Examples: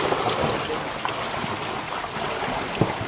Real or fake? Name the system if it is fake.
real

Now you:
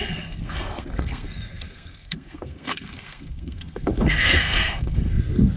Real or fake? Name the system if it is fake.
fake, codec, SNAC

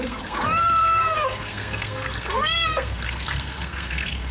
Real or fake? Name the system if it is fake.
fake, codec, SNAC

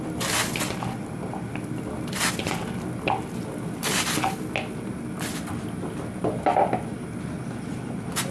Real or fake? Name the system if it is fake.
real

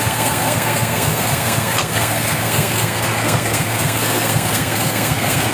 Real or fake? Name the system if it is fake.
fake, codec, SNAC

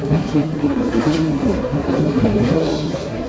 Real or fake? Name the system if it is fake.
fake, codec, SNAC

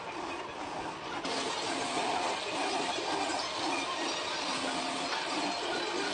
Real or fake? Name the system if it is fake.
real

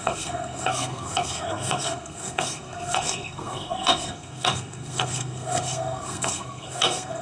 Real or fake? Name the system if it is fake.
fake, codec, SNAC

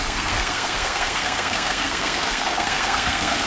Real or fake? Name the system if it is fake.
fake, codec, SNAC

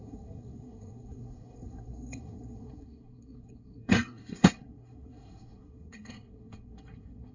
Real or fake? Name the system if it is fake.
fake, codec, SNAC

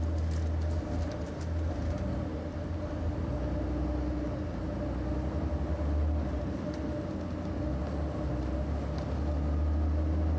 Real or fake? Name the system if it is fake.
real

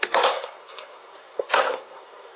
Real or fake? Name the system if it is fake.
fake, codec, SNAC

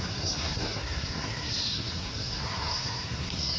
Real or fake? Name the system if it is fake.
fake, codec, SNAC